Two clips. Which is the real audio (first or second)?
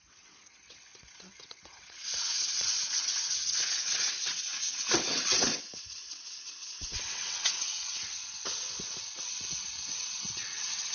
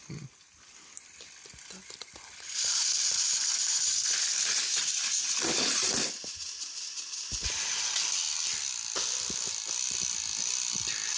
second